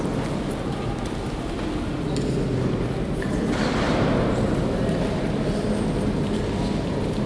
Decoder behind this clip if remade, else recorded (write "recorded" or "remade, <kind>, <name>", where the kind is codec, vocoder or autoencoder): recorded